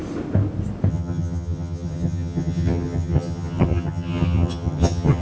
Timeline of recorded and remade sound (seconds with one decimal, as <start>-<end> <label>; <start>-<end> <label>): 0.0-0.9 recorded; 0.9-5.2 remade